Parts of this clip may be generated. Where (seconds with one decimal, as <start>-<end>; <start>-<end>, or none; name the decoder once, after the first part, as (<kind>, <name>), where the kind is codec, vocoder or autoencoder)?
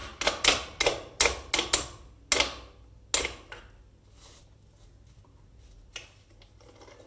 none